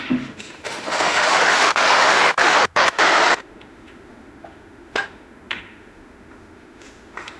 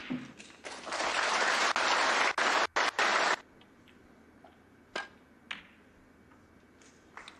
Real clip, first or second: second